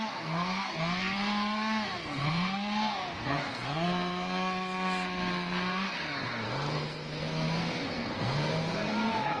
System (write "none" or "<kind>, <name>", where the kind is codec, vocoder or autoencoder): codec, SNAC